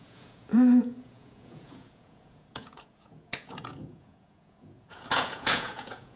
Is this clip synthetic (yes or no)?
yes